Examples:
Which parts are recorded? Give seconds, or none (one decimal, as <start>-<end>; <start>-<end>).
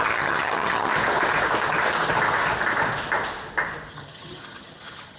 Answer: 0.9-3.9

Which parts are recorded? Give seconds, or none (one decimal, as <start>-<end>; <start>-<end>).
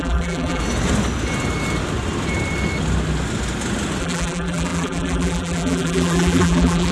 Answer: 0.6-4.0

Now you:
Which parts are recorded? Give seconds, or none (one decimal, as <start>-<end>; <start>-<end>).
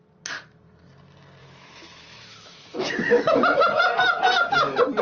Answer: 0.0-1.4; 3.8-5.0